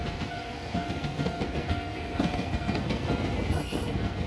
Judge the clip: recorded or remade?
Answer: remade